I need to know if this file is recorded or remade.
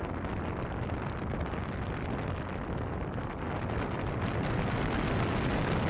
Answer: recorded